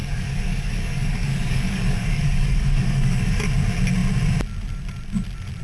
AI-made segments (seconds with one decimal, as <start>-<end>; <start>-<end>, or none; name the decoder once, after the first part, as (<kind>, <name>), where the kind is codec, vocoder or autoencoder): 0.0-3.4 (codec, DAC)